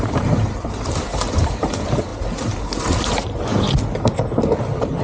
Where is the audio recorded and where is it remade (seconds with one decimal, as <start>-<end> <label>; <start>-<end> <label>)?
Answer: 0.0-2.1 remade; 2.1-3.0 recorded; 3.0-3.5 remade; 3.5-4.5 recorded; 4.5-5.0 remade